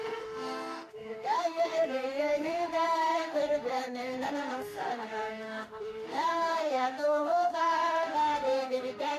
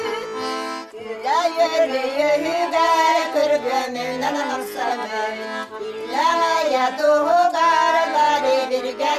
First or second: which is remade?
first